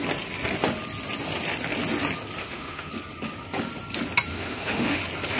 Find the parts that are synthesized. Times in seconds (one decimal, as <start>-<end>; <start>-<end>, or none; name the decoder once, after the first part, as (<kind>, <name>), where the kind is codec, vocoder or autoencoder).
2.4-2.9 (autoencoder, DAC-VAE); 4.3-5.0